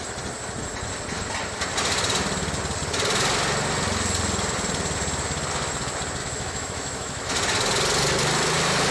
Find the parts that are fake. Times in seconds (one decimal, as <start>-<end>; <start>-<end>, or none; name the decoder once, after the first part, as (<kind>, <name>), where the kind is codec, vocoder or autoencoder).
6.2-7.3 (autoencoder, DAC-VAE)